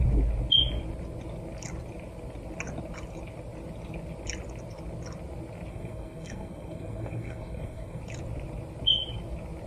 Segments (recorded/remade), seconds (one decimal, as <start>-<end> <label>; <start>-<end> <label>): 0.0-5.7 recorded; 5.7-8.0 remade; 8.0-9.7 recorded